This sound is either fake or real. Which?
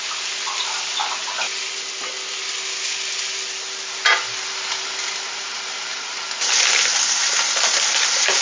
real